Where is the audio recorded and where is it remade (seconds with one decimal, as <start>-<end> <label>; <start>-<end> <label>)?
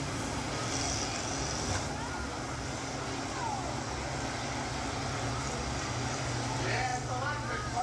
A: 0.0-7.8 recorded